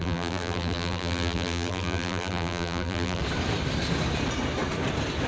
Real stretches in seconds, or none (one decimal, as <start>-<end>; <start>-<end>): 3.2-5.3